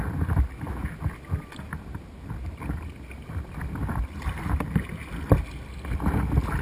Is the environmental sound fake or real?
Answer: real